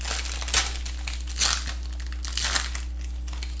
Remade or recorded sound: recorded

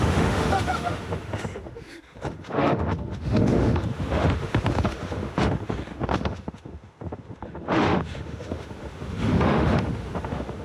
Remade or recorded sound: remade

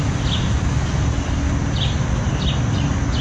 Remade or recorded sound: recorded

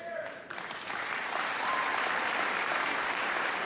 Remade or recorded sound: remade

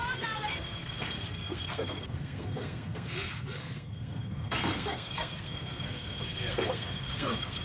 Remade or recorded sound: remade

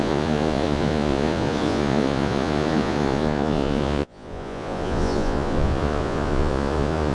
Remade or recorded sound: remade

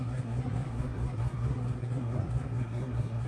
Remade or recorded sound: remade